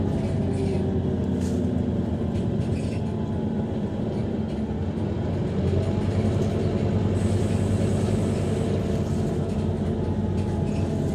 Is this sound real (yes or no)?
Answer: yes